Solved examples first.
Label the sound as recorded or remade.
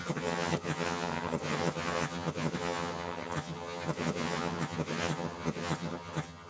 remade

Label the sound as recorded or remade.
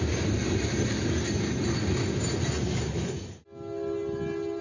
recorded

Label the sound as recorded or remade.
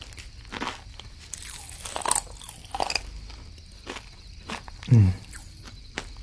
recorded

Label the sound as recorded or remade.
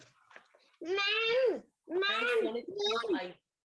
recorded